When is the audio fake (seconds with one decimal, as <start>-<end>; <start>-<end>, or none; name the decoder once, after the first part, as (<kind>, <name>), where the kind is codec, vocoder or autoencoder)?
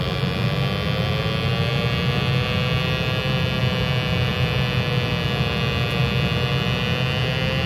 none